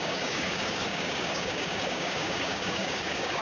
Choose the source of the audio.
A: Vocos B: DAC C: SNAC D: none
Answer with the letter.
B